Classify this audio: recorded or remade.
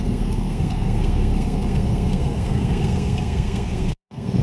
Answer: remade